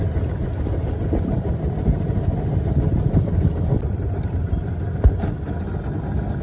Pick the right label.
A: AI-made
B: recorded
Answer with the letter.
B